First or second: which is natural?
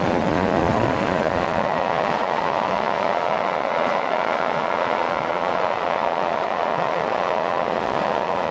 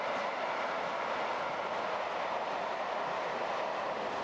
second